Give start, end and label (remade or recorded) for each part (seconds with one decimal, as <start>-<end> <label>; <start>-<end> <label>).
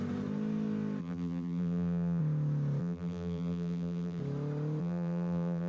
0.0-1.0 recorded; 1.0-2.2 remade; 2.2-2.8 recorded; 2.8-4.2 remade; 4.2-4.8 recorded; 4.8-5.7 remade